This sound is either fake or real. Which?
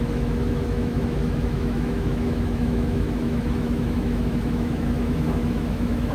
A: fake